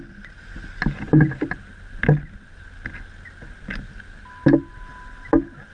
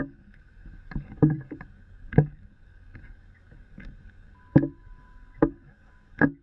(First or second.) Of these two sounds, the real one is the first